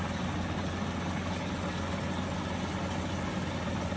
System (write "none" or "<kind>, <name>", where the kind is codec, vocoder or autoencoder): none